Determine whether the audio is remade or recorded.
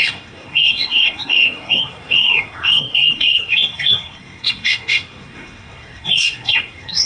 remade